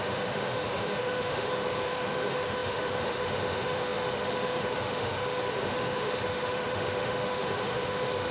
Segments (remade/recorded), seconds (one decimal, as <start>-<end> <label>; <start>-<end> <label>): 0.0-8.3 remade